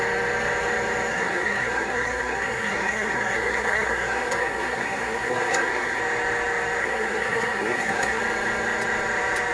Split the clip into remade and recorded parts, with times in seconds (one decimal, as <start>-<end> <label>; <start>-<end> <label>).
0.0-1.1 recorded; 1.1-6.0 remade; 6.0-6.8 recorded; 6.8-8.2 remade; 8.2-9.5 recorded